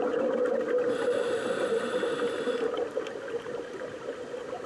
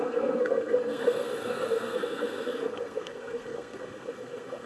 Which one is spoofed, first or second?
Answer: second